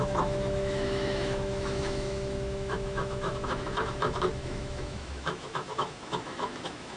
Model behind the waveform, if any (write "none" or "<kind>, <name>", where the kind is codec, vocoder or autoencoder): autoencoder, DAC-VAE